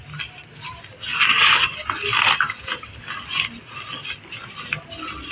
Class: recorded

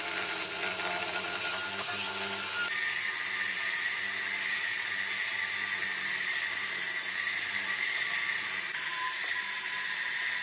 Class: remade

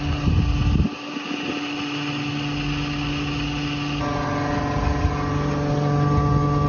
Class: recorded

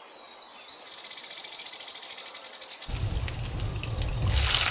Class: recorded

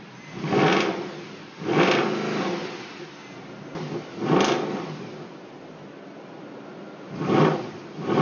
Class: recorded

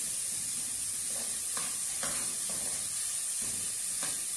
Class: remade